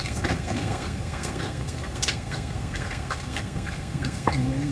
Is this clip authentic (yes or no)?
no